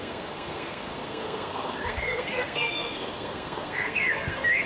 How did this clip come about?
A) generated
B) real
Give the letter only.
A